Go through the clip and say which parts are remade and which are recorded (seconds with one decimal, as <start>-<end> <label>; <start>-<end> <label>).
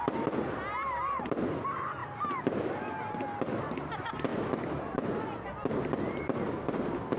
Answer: 0.0-2.0 remade; 2.0-3.6 recorded; 3.6-4.3 remade; 4.3-6.1 recorded; 6.1-7.2 remade